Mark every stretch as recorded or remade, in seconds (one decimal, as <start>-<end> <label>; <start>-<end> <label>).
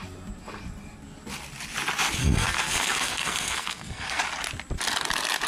0.0-2.2 recorded; 2.2-4.2 remade; 4.2-5.5 recorded